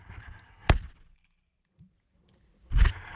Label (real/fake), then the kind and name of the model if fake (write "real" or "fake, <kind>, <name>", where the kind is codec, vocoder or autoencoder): real